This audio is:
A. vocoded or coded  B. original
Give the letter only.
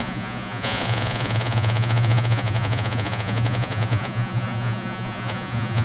A